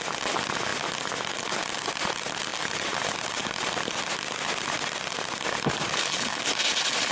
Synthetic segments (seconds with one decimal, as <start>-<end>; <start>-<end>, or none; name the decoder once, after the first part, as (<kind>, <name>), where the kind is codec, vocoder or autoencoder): none